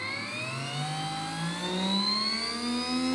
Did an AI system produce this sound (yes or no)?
no